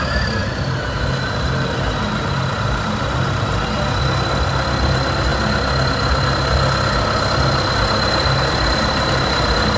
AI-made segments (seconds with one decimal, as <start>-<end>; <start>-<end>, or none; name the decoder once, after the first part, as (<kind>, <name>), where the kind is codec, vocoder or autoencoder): none